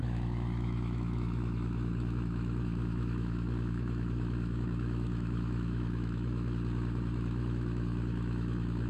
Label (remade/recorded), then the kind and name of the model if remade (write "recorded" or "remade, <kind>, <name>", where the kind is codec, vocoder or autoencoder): remade, autoencoder, DAC-VAE